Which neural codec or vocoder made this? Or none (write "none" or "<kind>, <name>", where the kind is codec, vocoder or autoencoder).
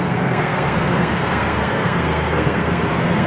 codec, SNAC